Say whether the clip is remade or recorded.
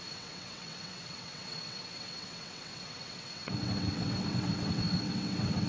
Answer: remade